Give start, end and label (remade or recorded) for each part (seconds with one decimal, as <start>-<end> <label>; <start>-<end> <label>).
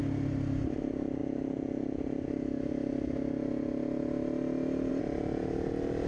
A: 0.0-6.1 recorded